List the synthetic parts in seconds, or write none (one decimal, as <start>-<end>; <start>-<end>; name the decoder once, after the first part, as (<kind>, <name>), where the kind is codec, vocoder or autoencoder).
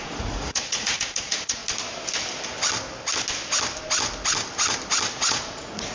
0.0-1.6 (vocoder, Vocos); 5.1-5.9